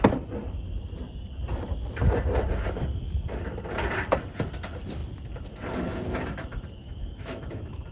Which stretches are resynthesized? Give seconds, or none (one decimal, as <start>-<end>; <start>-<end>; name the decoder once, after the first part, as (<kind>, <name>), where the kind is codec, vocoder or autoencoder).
6.8-7.9 (autoencoder, DAC-VAE)